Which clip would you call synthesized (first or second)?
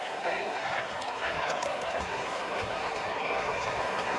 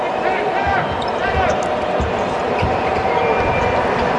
first